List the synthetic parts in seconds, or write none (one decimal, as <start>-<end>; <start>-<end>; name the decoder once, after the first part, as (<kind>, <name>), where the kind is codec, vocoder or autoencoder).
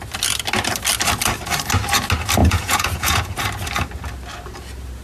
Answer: 2.4-3.4 (vocoder, Vocos)